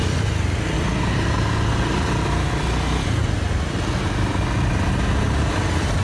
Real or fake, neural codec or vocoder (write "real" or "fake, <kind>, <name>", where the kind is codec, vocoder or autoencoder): real